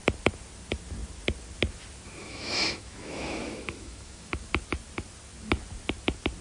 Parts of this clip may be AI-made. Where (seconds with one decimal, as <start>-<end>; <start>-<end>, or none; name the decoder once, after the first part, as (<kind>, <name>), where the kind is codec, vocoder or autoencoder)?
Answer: 2.2-4.3 (autoencoder, DAC-VAE)